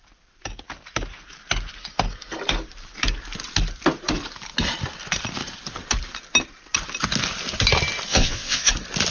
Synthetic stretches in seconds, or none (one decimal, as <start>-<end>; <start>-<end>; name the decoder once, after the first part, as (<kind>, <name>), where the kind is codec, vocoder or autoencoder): 8.1-8.7 (vocoder, WaveNeXt)